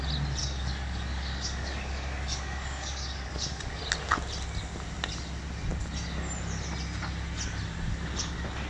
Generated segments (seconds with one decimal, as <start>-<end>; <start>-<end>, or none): 0.4-3.8